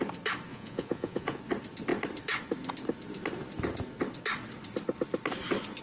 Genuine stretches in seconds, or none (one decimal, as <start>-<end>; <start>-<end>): 0.0-0.5; 1.4-5.8